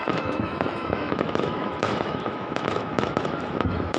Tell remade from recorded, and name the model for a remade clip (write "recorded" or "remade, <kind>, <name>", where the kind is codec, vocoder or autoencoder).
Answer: remade, autoencoder, DAC-VAE